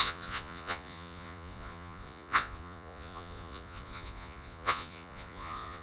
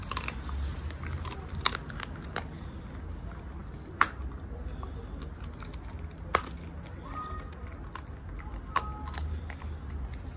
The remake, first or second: first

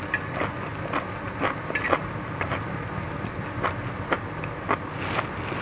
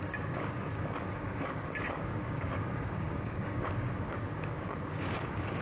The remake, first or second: second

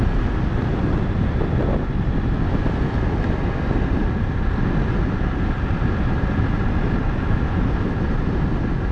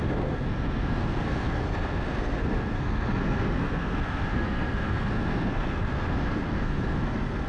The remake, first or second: second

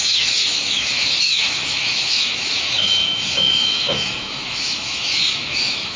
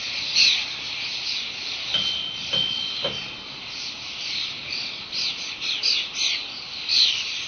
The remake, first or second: first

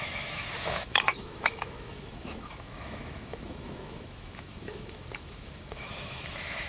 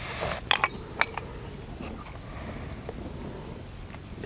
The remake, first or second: first